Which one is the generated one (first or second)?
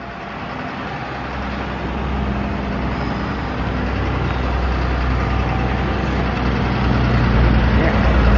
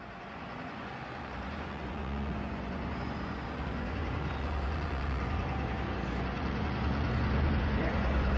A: second